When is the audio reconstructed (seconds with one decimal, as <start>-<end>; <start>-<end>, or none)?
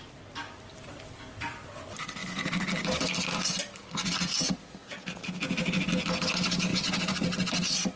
none